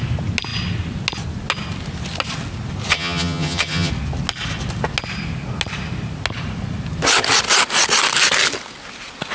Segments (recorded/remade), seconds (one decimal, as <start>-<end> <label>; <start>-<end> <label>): 0.0-2.9 recorded; 2.9-3.9 remade; 3.9-9.3 recorded